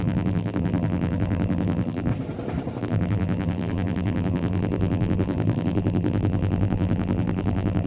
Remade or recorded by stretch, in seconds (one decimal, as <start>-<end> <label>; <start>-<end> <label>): 0.0-2.1 remade; 2.1-2.8 recorded; 2.8-7.9 remade